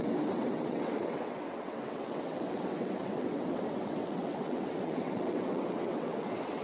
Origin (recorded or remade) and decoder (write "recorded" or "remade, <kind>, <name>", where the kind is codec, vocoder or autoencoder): remade, vocoder, WaveNeXt